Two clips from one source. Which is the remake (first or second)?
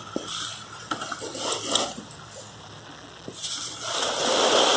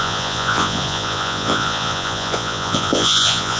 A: second